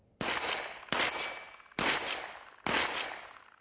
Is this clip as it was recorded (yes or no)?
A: yes